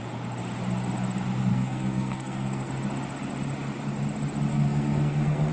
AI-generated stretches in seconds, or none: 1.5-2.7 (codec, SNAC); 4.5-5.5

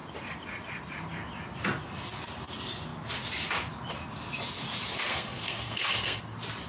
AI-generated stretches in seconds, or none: 5.1-6.2 (codec, SNAC)

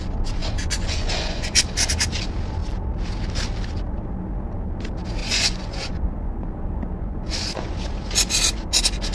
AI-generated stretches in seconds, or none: 0.4-1.6 (vocoder, Vocos); 5.2-7.8

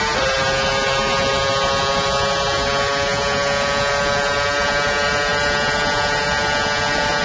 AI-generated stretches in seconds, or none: none

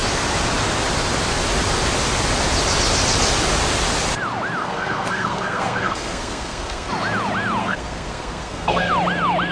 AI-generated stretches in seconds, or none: 4.6-6.9 (codec, SNAC); 7.6-8.9